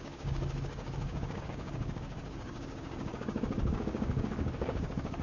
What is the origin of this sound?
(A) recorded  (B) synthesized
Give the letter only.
B